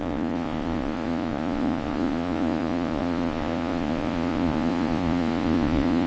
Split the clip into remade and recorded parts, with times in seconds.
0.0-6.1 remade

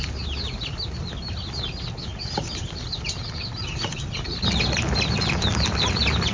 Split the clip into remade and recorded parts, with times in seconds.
0.0-2.1 recorded; 2.1-5.8 remade; 5.8-6.3 recorded

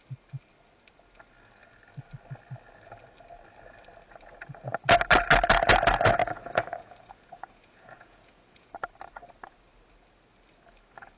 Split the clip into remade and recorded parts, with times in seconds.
0.0-6.2 recorded; 6.2-8.7 remade; 8.7-11.2 recorded

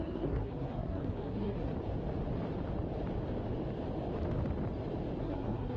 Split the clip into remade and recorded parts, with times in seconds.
0.0-1.7 remade; 1.7-5.2 recorded; 5.2-5.8 remade

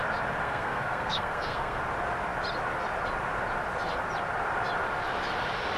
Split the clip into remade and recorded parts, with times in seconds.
0.0-0.4 recorded; 0.4-1.8 remade; 1.8-5.8 recorded